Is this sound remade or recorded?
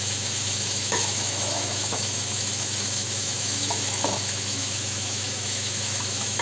remade